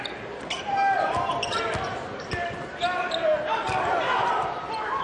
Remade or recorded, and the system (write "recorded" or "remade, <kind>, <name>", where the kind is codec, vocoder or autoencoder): recorded